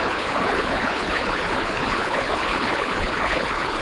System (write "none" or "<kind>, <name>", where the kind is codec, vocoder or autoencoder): codec, HILCodec